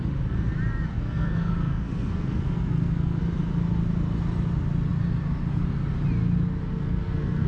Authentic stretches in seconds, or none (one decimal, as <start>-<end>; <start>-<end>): 0.0-0.9; 3.2-6.6